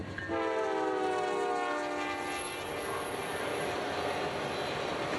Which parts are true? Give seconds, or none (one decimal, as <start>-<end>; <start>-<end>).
0.0-5.2